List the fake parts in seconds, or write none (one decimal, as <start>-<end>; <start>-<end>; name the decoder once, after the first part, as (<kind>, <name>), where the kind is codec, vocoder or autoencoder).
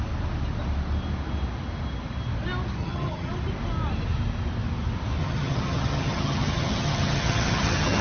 2.8-3.3 (vocoder, HiFi-GAN); 5.2-8.0